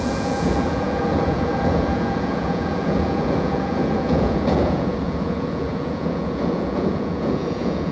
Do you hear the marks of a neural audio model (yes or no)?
yes